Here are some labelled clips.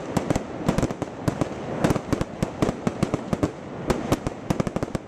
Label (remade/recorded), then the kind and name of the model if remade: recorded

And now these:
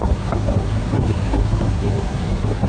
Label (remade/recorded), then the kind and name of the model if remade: remade, codec, SNAC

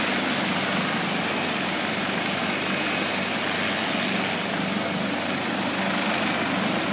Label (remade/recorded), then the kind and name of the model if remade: recorded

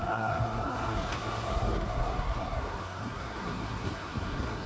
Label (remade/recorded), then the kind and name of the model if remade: remade, codec, SNAC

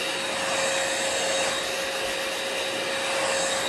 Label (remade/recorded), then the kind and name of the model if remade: recorded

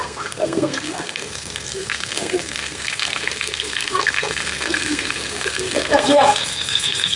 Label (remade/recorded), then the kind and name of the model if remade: remade, codec, SNAC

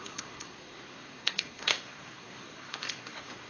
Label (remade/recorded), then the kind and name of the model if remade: remade, codec, SNAC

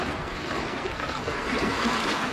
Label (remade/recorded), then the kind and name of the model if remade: remade, codec, SNAC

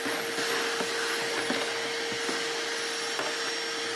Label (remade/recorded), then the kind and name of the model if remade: recorded